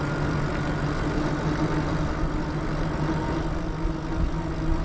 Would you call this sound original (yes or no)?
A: yes